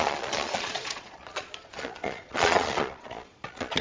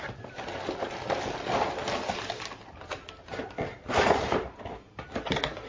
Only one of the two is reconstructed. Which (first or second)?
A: first